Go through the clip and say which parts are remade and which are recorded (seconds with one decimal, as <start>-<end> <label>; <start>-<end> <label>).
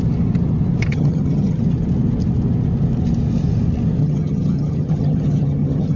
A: 0.0-0.9 recorded; 0.9-1.6 remade; 1.6-4.0 recorded; 4.0-6.0 remade